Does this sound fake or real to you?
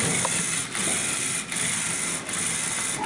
real